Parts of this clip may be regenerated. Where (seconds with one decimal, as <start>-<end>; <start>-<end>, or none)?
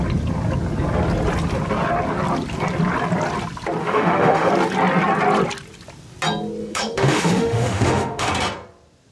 3.8-4.5; 6.6-8.3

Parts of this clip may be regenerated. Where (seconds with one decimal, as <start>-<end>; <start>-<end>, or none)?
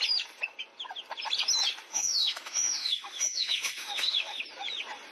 1.9-4.4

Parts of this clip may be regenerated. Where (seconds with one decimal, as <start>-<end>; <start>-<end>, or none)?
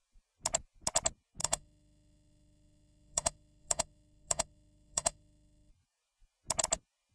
1.4-5.7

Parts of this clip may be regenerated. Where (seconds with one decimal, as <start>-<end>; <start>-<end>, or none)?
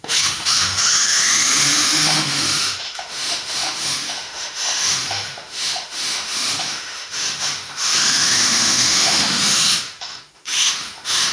0.0-11.3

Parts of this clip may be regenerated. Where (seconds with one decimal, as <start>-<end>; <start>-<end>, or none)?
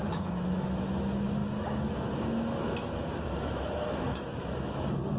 0.0-5.2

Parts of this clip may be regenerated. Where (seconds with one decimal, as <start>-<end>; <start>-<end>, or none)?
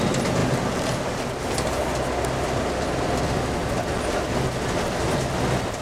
none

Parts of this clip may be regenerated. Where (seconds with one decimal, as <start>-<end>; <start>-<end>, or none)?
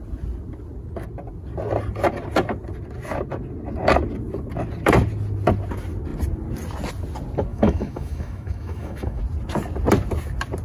7.5-9.2